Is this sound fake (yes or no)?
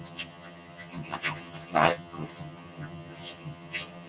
yes